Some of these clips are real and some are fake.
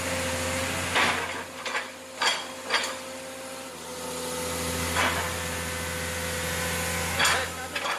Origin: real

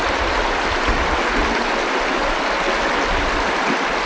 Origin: real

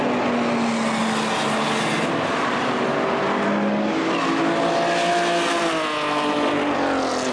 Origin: real